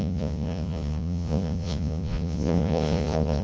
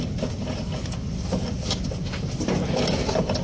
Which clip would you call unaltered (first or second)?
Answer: second